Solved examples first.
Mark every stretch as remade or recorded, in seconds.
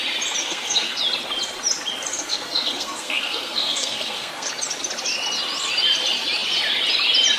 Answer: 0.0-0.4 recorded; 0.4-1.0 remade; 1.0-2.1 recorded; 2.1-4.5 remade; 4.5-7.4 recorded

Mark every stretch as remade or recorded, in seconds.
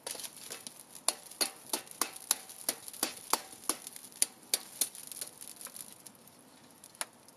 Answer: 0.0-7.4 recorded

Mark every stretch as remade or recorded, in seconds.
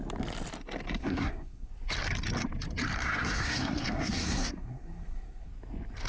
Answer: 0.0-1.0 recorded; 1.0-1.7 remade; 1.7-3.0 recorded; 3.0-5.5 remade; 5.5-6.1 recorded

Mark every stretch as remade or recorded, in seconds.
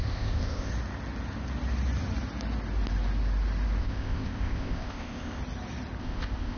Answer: 0.0-0.7 remade; 0.7-3.8 recorded; 3.8-5.4 remade; 5.4-6.0 recorded; 6.0-6.6 remade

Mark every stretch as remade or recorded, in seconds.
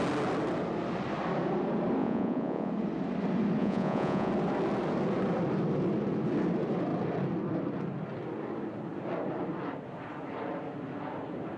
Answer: 0.0-2.0 recorded; 2.0-2.7 remade; 2.7-3.6 recorded; 3.6-4.3 remade; 4.3-11.6 recorded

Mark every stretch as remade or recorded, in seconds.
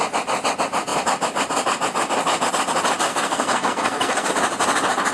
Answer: 0.0-3.1 recorded; 3.1-4.3 remade; 4.3-5.1 recorded